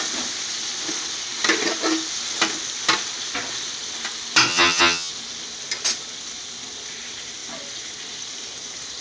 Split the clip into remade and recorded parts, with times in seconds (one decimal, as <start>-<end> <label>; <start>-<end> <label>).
0.0-4.5 recorded; 4.5-5.1 remade; 5.1-9.0 recorded